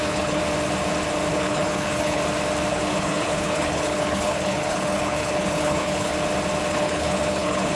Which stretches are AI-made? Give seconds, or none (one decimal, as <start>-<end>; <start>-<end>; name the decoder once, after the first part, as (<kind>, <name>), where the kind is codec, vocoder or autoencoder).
0.0-0.4 (codec, HILCodec); 1.3-2.2; 2.7-6.1; 6.7-7.8